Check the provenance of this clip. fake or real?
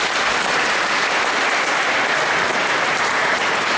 real